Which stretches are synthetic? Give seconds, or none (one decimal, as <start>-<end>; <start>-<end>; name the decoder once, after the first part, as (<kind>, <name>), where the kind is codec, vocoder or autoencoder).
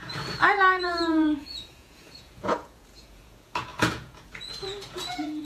0.0-5.4 (vocoder, Vocos)